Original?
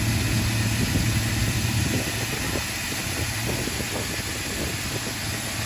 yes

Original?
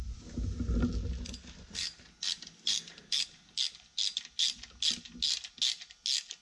yes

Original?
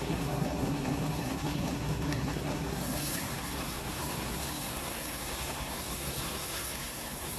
no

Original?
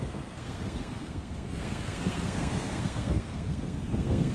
no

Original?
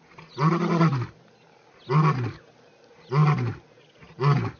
yes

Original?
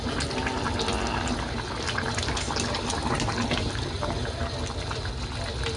yes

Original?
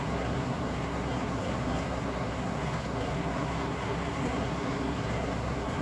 no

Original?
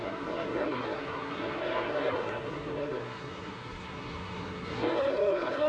no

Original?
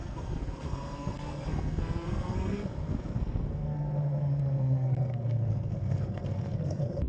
no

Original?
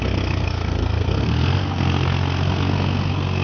no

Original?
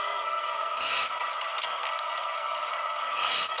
no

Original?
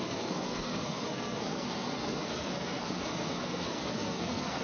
no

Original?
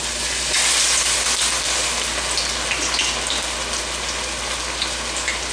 yes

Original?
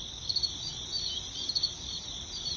yes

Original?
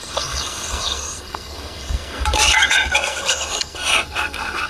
no